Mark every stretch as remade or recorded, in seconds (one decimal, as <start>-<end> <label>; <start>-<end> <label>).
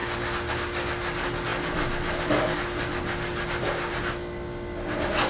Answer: 0.0-5.3 recorded